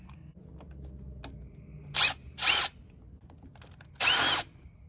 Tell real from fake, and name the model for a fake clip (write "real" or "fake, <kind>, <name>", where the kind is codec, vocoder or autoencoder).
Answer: real